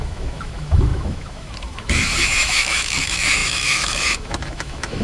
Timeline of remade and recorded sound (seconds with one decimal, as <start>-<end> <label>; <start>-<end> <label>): 0.0-5.0 remade